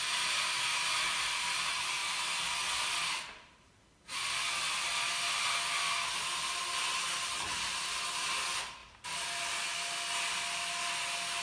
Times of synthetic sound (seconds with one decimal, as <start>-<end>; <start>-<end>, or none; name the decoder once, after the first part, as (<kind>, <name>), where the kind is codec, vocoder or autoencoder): none